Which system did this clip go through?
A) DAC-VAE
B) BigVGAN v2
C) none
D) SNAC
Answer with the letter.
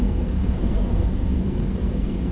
D